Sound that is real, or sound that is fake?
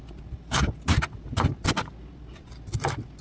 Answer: real